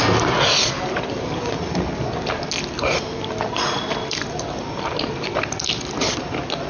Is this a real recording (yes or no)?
yes